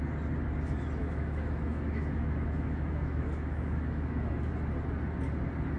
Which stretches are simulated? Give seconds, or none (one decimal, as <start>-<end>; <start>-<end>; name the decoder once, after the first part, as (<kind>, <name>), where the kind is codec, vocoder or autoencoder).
1.0-4.5 (autoencoder, DAC-VAE)

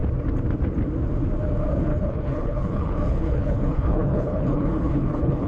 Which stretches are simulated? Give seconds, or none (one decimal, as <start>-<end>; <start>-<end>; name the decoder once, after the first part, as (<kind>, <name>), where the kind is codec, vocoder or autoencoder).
1.9-5.5 (codec, HILCodec)

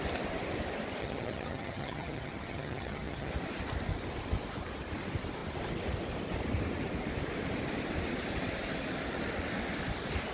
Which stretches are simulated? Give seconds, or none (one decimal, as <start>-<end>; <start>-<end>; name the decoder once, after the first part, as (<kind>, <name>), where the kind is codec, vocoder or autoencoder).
1.0-3.3 (vocoder, HiFi-GAN)

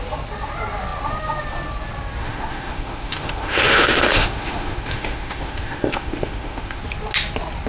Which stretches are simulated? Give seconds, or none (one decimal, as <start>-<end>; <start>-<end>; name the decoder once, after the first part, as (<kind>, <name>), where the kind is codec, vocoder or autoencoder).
2.2-6.8 (autoencoder, DAC-VAE)

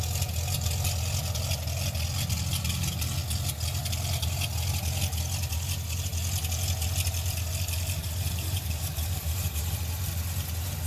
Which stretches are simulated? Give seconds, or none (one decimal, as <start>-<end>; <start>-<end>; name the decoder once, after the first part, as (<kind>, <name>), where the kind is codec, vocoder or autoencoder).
8.0-9.8 (vocoder, BigVGAN v2)

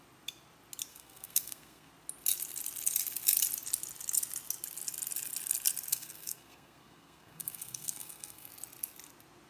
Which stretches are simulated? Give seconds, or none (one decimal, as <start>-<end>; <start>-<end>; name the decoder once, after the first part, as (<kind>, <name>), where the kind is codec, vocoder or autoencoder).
0.9-1.9 (codec, SNAC); 5.9-8.5

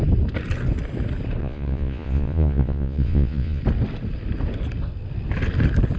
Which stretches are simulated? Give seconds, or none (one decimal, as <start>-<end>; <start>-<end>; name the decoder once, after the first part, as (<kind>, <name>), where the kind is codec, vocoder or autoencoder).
1.4-3.6 (vocoder, Vocos)

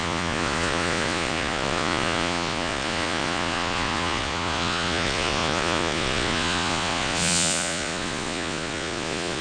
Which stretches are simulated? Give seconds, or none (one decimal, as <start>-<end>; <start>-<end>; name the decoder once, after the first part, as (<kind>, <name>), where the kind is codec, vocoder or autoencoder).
0.0-9.4 (vocoder, Vocos)